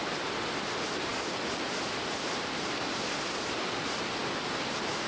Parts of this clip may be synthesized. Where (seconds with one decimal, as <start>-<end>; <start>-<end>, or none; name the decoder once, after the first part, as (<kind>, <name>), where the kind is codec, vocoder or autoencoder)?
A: none